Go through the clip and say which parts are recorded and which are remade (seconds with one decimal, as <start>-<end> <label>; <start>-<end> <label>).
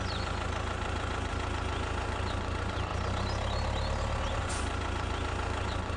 0.0-2.9 remade; 2.9-4.4 recorded; 4.4-6.0 remade